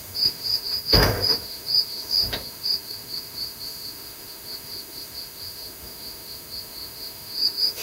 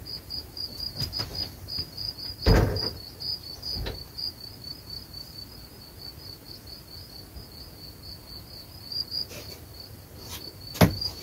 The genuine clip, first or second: second